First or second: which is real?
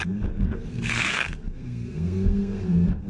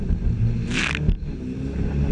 second